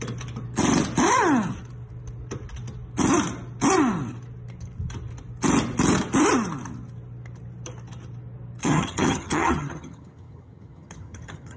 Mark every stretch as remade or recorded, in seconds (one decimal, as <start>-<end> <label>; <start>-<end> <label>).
0.0-8.6 recorded; 8.6-11.6 remade